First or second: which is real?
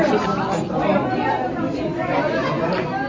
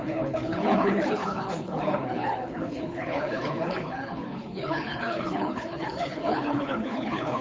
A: first